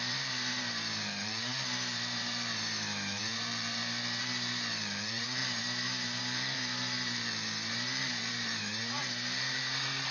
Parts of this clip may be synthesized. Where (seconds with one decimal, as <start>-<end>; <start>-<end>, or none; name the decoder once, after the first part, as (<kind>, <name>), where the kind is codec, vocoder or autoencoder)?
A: 0.0-10.1 (vocoder, BigVGAN v2)